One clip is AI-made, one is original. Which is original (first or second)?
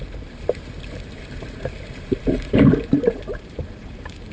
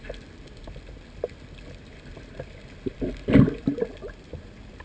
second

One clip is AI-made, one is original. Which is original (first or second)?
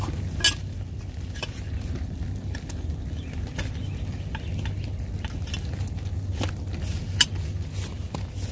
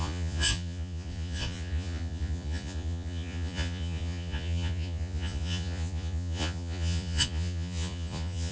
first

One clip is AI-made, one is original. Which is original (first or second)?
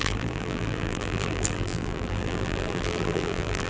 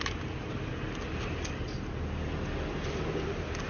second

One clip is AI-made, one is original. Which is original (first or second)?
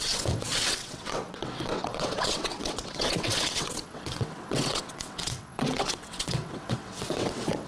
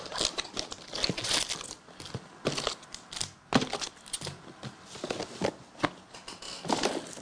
second